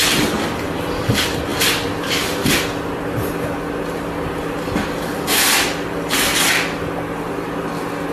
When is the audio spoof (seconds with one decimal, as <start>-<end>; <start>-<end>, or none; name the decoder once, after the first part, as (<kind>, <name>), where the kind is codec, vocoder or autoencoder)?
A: none